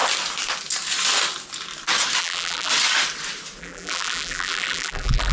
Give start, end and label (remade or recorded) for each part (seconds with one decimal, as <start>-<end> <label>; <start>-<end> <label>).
0.0-2.2 recorded; 2.2-2.7 remade; 2.7-3.6 recorded; 3.6-5.3 remade